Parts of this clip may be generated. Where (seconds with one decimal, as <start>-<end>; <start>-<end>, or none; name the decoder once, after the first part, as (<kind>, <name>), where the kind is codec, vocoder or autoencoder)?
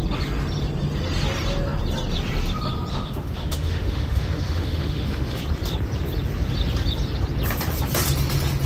2.9-5.4 (autoencoder, DAC-VAE)